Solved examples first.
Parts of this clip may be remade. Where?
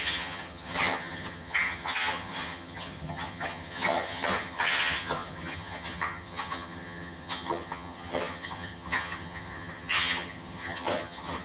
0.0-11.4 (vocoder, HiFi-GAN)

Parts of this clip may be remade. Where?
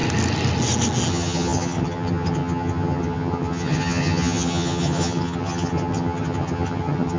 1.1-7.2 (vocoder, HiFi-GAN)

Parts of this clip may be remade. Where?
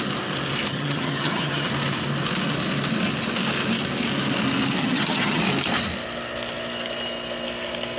0.7-1.7 (vocoder, HiFi-GAN); 4.8-5.4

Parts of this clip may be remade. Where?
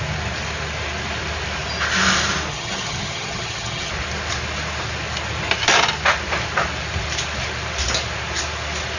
2.5-3.9 (vocoder, HiFi-GAN)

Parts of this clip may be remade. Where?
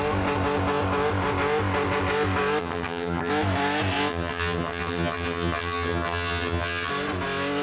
2.6-3.3 (vocoder, HiFi-GAN); 4.1-6.9